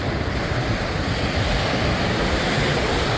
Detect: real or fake real